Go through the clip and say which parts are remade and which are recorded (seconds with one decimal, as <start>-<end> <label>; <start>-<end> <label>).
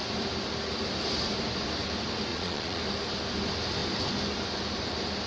0.0-2.3 recorded; 2.3-2.8 remade; 2.8-5.3 recorded